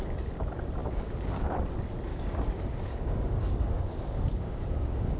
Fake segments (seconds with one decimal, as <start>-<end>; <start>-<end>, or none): 0.8-1.5; 2.1-5.2